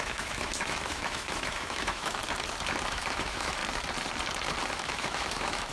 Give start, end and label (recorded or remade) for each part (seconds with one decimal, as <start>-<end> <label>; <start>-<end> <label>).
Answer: 0.0-2.2 remade; 2.2-2.9 recorded; 2.9-3.6 remade; 3.6-4.7 recorded; 4.7-5.7 remade